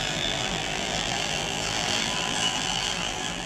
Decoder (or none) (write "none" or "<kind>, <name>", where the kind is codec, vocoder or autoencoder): vocoder, BigVGAN v2